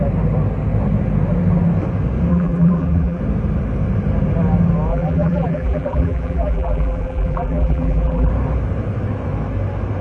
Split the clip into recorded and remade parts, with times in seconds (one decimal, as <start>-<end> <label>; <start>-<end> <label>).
0.0-2.3 recorded; 2.3-3.2 remade; 3.2-4.9 recorded; 4.9-8.3 remade; 8.3-10.0 recorded